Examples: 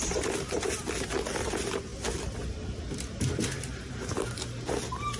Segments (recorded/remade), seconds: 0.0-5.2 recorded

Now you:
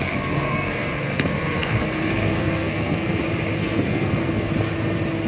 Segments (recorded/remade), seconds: 0.0-3.2 remade; 3.2-3.6 recorded; 3.6-4.5 remade; 4.5-5.3 recorded

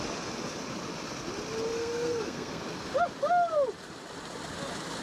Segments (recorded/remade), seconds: 0.0-1.7 recorded; 1.7-2.6 remade; 2.6-5.0 recorded

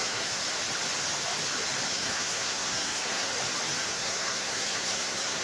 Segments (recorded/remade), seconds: 0.0-0.4 remade; 0.4-1.9 recorded; 1.9-3.3 remade; 3.3-3.9 recorded; 3.9-5.4 remade

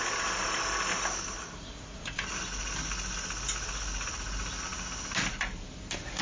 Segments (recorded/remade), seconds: 0.0-1.4 recorded; 1.4-2.2 remade; 2.2-6.2 recorded

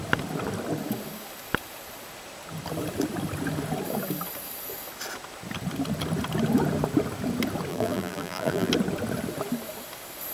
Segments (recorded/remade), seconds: 0.0-7.7 recorded; 7.7-8.7 remade; 8.7-10.3 recorded

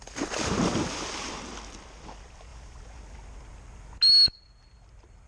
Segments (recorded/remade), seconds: 0.0-5.3 recorded

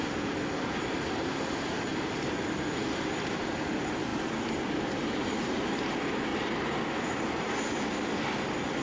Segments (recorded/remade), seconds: 0.0-1.9 recorded; 1.9-3.4 remade; 3.4-4.1 recorded; 4.1-4.9 remade; 4.9-6.3 recorded; 6.3-7.6 remade; 7.6-8.8 recorded